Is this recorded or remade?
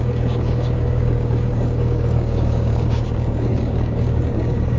remade